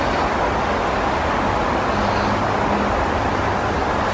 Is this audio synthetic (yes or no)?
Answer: no